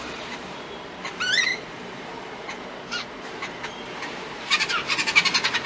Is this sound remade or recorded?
remade